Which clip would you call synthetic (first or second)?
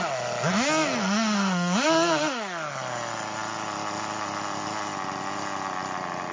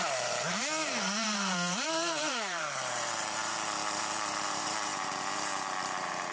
second